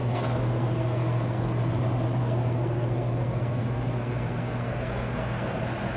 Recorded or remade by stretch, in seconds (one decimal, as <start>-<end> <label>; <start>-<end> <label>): 0.0-1.8 remade; 1.8-2.2 recorded; 2.2-5.6 remade; 5.6-6.0 recorded

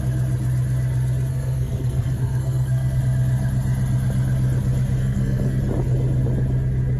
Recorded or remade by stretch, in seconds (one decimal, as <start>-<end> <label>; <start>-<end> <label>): 0.0-1.3 recorded; 1.3-3.0 remade; 3.0-5.0 recorded; 5.0-5.6 remade; 5.6-7.0 recorded

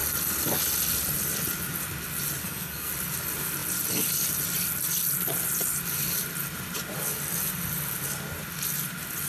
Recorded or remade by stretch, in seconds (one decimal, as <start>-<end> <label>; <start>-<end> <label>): 0.0-2.4 recorded; 2.4-2.9 remade; 2.9-9.3 recorded

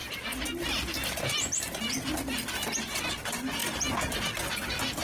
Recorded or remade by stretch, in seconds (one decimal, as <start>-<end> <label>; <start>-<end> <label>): 0.0-5.0 recorded

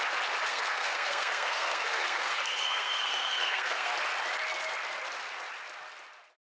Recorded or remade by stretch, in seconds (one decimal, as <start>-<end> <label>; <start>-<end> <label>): 0.0-0.5 recorded; 0.5-3.9 remade; 3.9-6.4 recorded

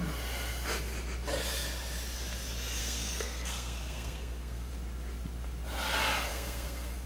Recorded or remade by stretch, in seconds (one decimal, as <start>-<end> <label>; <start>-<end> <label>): 0.0-2.8 recorded; 2.8-4.7 remade; 4.7-6.3 recorded; 6.3-7.1 remade

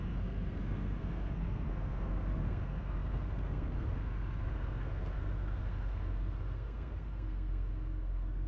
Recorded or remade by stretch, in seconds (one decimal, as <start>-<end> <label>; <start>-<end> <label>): 0.0-8.5 remade